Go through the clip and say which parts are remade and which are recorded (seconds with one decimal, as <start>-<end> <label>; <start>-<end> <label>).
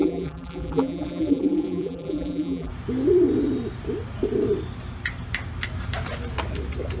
0.0-2.7 remade; 2.7-7.0 recorded